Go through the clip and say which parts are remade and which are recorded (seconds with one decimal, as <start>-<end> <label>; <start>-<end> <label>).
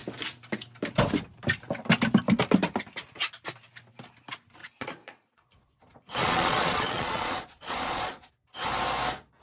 0.0-4.6 recorded; 4.6-8.3 remade; 8.3-9.4 recorded